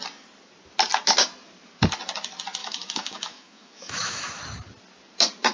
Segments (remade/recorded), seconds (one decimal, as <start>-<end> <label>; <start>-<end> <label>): 0.0-2.6 recorded; 2.6-4.4 remade; 4.4-5.5 recorded